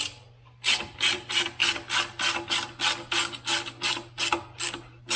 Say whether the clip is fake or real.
real